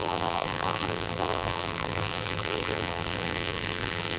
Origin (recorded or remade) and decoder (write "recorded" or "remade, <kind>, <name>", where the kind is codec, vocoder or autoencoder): remade, vocoder, BigVGAN v2